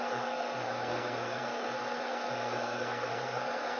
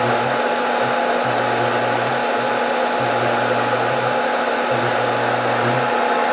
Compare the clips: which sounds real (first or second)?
second